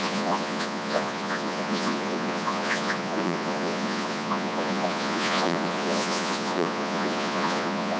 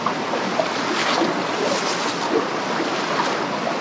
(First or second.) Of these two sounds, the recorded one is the second